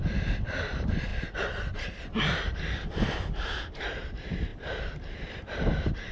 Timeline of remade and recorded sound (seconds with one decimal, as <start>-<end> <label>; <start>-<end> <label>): 0.0-6.1 recorded